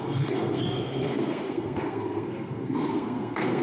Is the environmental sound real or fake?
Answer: fake